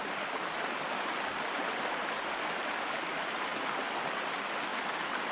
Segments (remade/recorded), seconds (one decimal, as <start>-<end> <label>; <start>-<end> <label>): 0.0-5.3 recorded